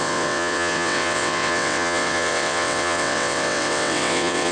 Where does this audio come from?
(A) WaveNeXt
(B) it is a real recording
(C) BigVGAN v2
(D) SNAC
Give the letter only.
A